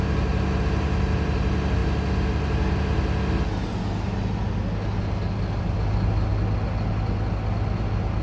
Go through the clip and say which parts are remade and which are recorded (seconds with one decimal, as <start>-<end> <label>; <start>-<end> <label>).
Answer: 0.0-8.2 recorded